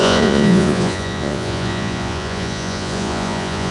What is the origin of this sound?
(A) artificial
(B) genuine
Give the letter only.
A